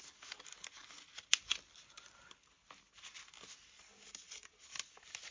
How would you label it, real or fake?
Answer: real